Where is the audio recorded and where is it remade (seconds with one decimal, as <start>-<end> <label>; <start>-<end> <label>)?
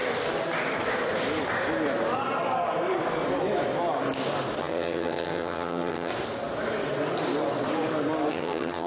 0.0-4.6 recorded; 4.6-6.1 remade; 6.1-8.3 recorded; 8.3-8.9 remade